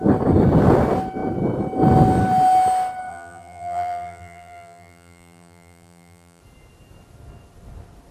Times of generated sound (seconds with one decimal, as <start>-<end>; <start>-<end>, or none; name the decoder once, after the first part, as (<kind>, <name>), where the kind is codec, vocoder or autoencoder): 3.1-6.4 (vocoder, BigVGAN v2)